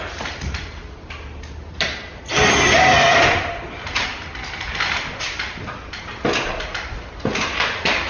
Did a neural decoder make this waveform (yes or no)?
no